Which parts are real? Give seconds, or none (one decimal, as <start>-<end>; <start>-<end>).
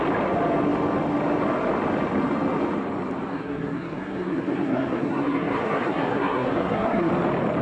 0.0-3.3; 7.1-7.6